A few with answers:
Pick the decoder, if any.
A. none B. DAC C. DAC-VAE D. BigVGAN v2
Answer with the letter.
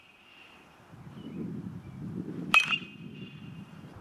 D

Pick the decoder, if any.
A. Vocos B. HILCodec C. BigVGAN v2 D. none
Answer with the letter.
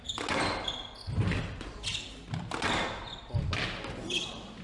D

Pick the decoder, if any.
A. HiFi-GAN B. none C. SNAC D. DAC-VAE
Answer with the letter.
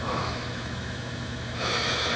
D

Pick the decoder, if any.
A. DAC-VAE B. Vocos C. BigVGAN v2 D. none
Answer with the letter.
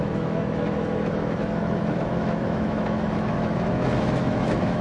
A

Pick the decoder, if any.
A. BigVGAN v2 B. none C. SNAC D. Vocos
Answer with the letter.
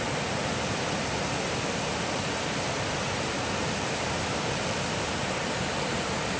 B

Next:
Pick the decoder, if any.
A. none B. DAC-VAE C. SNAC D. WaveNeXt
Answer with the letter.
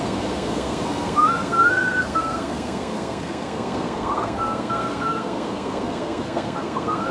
C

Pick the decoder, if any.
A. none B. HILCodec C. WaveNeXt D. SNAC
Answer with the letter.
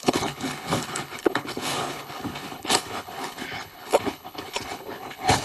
B